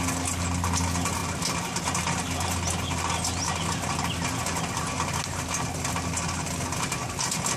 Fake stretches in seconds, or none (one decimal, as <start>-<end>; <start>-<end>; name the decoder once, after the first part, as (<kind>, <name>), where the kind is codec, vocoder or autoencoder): none